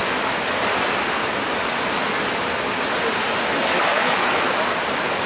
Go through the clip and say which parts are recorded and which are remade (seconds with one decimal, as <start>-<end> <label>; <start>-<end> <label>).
0.0-3.9 recorded; 3.9-4.5 remade; 4.5-5.3 recorded